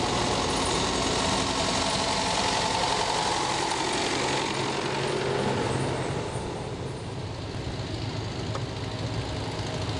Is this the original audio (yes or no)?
yes